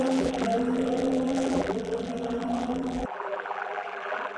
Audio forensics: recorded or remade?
remade